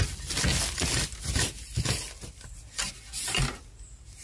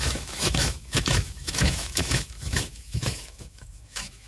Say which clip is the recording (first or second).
first